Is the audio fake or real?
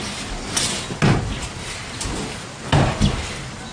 real